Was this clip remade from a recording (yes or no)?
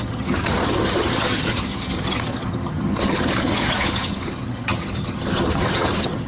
yes